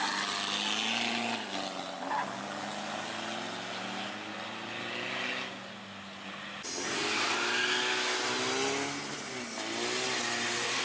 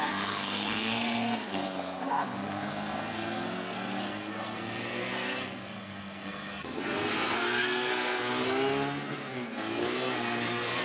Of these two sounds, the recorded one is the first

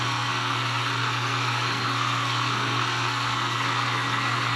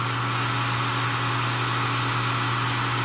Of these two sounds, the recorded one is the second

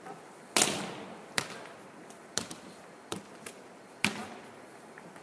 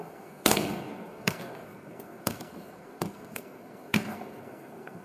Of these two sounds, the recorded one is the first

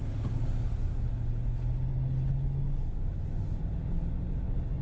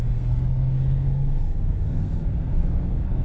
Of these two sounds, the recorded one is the first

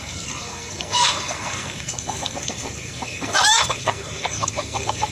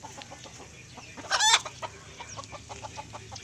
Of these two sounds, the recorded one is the second